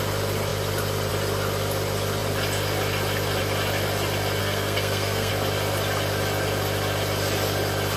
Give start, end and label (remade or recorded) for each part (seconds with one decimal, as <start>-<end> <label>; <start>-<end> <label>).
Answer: 0.0-4.4 recorded; 4.4-5.3 remade; 5.3-8.0 recorded